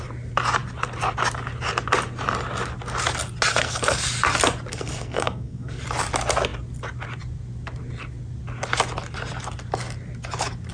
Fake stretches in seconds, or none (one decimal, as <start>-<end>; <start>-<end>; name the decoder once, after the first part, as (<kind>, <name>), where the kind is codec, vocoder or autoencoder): 3.5-4.0 (codec, SNAC); 4.7-5.8